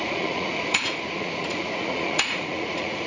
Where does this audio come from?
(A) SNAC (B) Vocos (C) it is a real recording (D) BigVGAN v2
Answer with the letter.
B